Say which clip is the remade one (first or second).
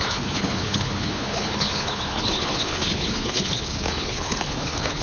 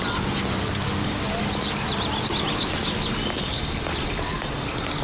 first